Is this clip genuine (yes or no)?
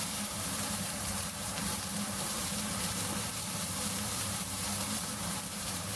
no